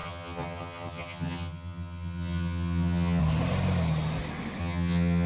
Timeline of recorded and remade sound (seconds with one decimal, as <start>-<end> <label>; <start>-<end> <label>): 0.0-3.2 remade; 3.2-4.6 recorded; 4.6-5.3 remade